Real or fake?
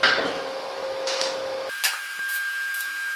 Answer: fake